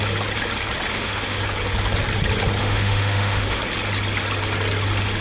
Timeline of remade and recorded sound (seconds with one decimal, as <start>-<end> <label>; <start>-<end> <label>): 0.0-0.9 recorded; 0.9-1.4 remade; 1.4-2.6 recorded; 2.6-3.6 remade; 3.6-5.2 recorded